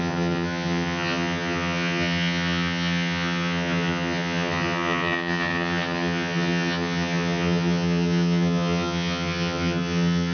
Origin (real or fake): fake